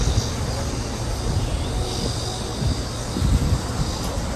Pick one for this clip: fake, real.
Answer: real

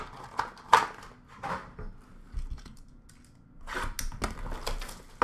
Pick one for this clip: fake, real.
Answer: real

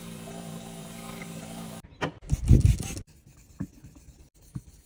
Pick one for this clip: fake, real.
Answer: fake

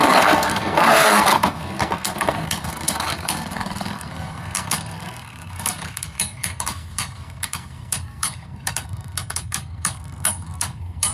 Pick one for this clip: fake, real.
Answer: fake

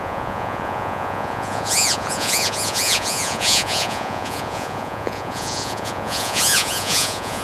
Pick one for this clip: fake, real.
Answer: fake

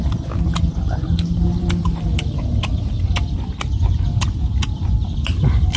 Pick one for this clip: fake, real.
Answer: real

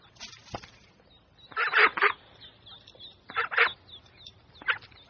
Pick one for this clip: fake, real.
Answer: real